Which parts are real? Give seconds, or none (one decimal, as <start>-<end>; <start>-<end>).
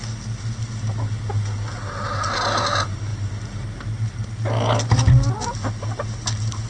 0.0-6.7